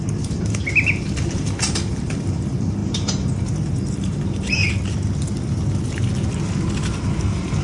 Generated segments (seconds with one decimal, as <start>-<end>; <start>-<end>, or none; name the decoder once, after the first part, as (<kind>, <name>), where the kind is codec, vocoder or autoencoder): 0.0-4.6 (vocoder, BigVGAN v2); 6.8-7.6